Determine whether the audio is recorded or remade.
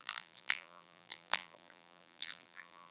remade